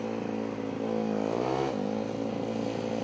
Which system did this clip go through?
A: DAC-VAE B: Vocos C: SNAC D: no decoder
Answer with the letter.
D